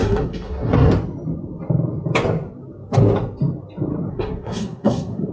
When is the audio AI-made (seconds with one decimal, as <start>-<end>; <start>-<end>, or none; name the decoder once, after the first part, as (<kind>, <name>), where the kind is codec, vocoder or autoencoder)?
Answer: 0.0-0.9 (codec, SNAC); 4.1-5.3